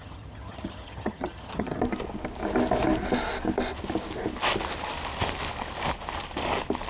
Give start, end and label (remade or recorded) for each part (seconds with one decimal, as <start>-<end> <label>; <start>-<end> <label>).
0.0-1.8 remade; 1.8-6.9 recorded